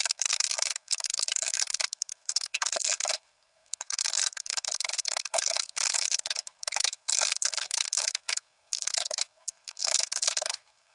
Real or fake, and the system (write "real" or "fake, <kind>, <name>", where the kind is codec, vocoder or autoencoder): fake, codec, SNAC